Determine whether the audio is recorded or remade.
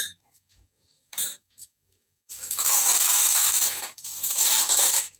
remade